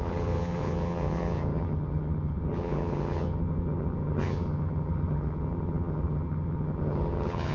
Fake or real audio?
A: fake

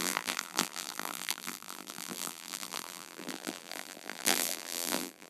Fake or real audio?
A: fake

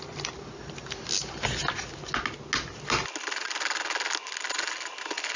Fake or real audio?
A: real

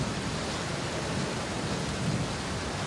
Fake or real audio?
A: real